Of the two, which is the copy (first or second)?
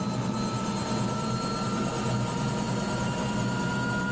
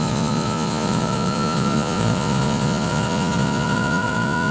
second